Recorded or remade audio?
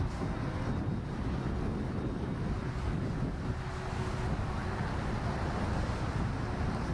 recorded